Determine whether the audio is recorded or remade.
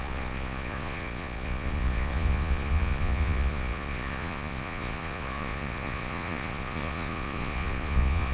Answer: remade